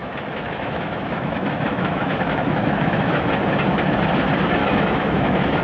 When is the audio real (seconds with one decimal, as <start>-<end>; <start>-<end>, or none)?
3.3-4.6

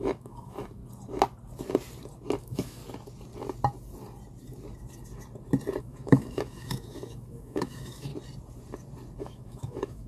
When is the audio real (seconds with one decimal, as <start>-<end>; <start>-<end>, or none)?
0.8-2.4; 2.8-5.8; 8.1-9.2

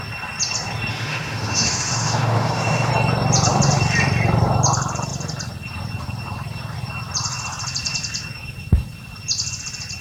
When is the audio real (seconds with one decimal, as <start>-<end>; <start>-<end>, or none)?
0.0-0.9; 2.9-10.0

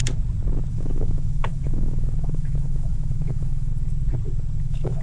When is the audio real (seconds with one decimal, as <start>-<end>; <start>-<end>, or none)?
0.0-0.7; 3.7-4.6

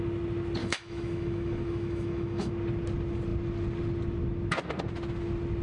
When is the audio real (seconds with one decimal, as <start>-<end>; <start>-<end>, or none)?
0.0-0.6; 2.5-5.6

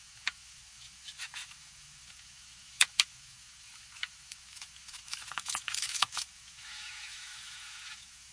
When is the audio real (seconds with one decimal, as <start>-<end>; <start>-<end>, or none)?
none